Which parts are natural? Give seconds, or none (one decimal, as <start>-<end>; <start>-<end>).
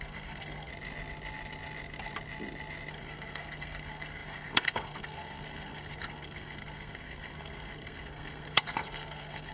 0.7-2.9